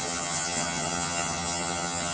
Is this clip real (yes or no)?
no